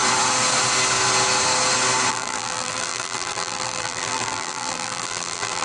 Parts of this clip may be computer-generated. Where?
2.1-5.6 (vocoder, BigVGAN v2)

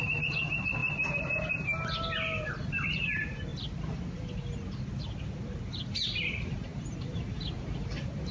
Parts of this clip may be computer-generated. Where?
0.0-3.5 (vocoder, BigVGAN v2); 6.2-8.3

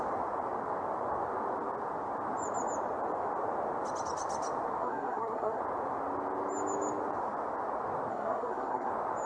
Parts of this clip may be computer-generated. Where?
4.8-5.6 (codec, SNAC); 8.1-8.9

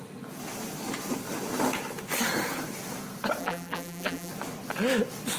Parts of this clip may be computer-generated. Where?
3.4-4.3 (vocoder, BigVGAN v2)